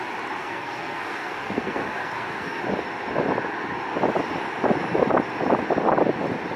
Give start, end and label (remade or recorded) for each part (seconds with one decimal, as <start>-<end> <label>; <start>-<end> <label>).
0.0-0.4 recorded; 0.4-2.6 remade; 2.6-6.6 recorded